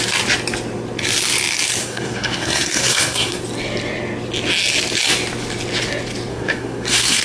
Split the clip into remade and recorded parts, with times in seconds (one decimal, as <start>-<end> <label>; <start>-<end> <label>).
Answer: 0.0-1.8 recorded; 1.8-3.4 remade; 3.4-6.3 recorded; 6.3-7.2 remade